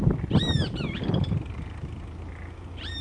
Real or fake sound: real